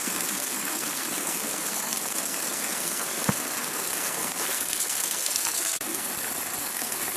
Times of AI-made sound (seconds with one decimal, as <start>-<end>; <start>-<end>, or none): 0.0-6.1; 6.6-7.2